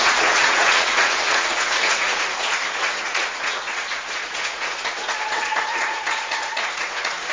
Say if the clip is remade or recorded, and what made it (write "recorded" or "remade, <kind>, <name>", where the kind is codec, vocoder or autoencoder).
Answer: remade, vocoder, Vocos